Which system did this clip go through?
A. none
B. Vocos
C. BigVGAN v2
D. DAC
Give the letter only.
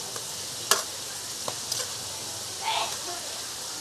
A